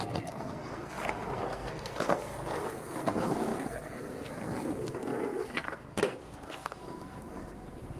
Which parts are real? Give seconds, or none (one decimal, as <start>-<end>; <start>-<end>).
none